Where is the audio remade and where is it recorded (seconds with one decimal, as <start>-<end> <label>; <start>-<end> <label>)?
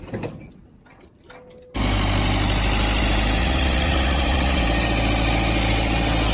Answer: 0.0-3.4 recorded; 3.4-4.6 remade; 4.6-6.3 recorded